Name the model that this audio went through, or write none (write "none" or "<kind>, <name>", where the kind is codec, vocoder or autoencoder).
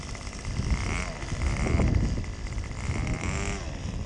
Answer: none